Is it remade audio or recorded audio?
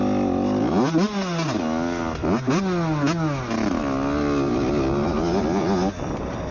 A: recorded